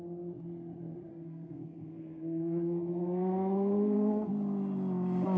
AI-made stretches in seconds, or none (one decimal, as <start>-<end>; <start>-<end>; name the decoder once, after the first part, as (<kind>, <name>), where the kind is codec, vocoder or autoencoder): 1.1-4.3 (codec, SNAC)

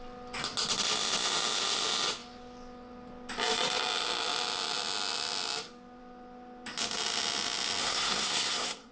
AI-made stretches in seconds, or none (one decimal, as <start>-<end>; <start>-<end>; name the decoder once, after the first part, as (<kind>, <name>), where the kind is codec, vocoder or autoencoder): 7.8-8.9 (codec, SNAC)

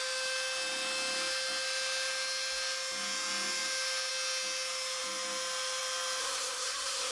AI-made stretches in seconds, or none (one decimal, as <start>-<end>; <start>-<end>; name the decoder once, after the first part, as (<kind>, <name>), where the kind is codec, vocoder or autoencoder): 6.2-7.1 (codec, SNAC)

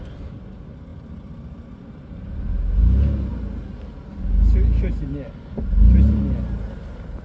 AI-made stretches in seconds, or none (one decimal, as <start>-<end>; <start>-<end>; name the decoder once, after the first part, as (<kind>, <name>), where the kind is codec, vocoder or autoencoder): none

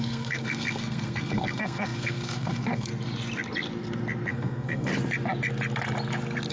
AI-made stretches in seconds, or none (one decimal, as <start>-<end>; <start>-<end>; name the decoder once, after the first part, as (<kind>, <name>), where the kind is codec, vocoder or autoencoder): 0.0-2.9 (codec, SNAC); 4.3-4.9

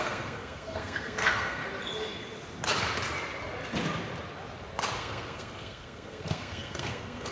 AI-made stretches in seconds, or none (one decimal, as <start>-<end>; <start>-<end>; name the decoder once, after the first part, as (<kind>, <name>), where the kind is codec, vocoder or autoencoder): 0.0-1.6 (codec, SNAC); 5.0-7.3